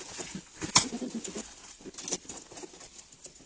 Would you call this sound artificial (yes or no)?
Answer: no